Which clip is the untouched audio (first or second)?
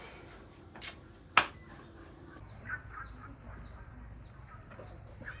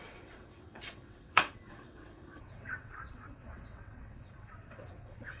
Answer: first